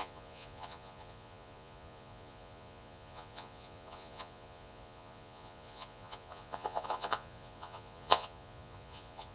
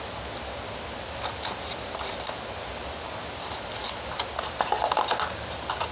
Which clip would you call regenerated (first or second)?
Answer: first